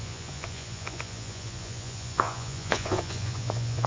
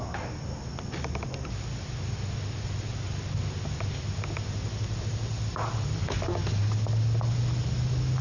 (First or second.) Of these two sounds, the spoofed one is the first